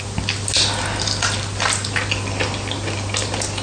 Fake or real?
real